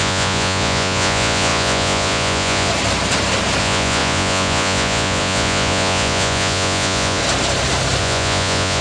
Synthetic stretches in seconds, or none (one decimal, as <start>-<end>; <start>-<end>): 0.0-2.7; 3.6-7.2; 8.0-8.8